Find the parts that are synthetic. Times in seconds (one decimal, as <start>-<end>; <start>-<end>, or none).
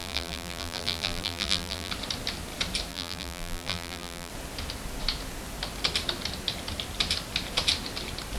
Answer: 0.0-1.9; 2.9-4.3